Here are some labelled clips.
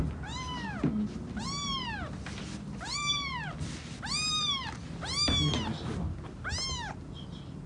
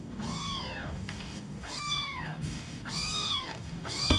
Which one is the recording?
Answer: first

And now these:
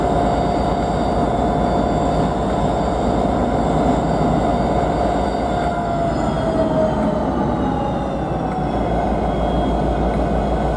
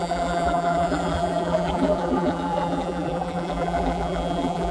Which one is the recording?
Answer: first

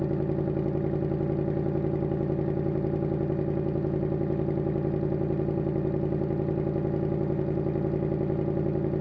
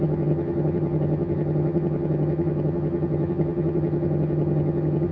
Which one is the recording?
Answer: first